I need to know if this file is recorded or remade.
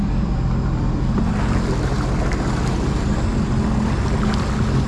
recorded